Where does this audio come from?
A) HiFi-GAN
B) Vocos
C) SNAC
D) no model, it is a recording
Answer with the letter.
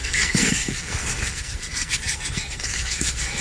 C